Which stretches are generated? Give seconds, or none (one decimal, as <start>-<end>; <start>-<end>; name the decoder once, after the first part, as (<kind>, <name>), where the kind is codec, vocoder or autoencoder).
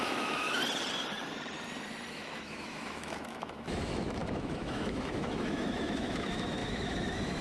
0.0-0.6 (autoencoder, DAC-VAE); 2.1-7.4